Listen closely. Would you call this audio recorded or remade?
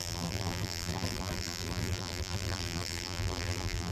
remade